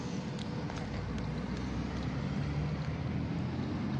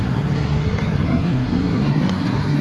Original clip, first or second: first